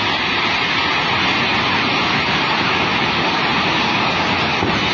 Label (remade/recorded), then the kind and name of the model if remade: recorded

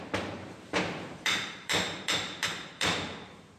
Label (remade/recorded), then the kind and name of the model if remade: remade, vocoder, BigVGAN v2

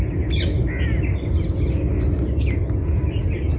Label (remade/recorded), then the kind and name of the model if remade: recorded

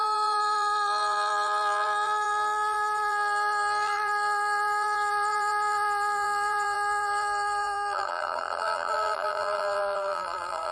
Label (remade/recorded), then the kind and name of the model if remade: remade, vocoder, BigVGAN v2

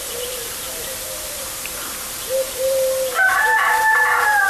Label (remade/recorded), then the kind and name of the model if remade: remade, vocoder, BigVGAN v2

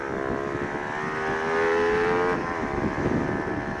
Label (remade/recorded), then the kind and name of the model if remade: recorded